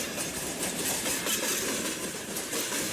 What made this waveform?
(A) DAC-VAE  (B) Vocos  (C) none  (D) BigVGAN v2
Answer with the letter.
C